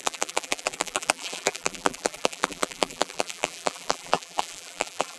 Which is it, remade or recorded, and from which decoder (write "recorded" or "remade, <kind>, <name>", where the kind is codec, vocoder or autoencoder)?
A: remade, vocoder, BigVGAN v2